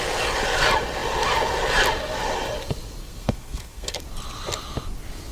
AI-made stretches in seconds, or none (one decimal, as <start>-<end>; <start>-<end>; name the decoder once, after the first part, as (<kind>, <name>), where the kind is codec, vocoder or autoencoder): 3.0-4.0 (codec, SNAC)